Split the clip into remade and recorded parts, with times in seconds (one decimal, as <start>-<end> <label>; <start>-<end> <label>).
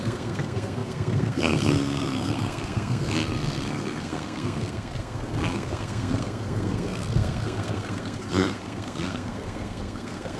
0.0-10.4 remade